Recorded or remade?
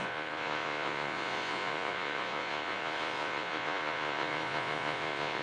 remade